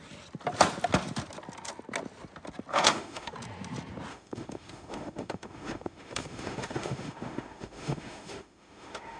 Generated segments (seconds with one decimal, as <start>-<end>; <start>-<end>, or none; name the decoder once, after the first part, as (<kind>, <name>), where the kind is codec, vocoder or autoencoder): 2.7-3.3 (autoencoder, DAC-VAE); 4.1-9.2